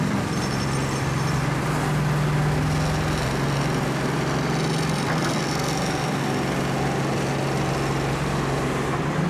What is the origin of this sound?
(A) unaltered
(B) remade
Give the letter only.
A